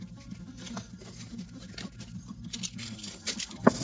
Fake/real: real